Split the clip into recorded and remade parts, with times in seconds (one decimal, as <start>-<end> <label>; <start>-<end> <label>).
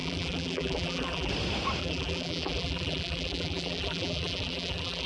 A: 0.0-1.3 remade; 1.3-1.8 recorded; 1.8-5.1 remade